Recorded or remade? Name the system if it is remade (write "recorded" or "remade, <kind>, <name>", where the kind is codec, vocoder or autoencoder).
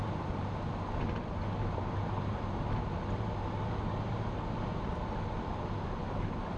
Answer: recorded